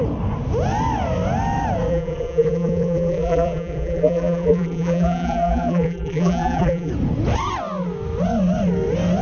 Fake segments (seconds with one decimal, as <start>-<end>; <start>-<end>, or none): 1.9-6.9